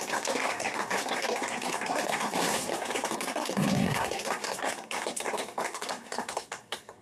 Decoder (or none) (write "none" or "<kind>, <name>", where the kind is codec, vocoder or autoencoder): codec, SNAC